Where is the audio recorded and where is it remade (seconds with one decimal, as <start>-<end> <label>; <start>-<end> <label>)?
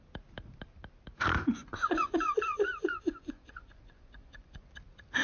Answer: 0.0-1.6 recorded; 1.6-4.7 remade; 4.7-5.2 recorded